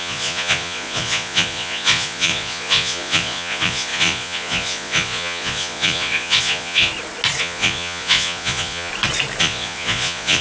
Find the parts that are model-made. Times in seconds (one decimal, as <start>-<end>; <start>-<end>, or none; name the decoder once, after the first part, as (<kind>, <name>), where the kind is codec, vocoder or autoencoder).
0.0-6.9 (vocoder, Vocos); 7.4-8.9; 9.4-10.4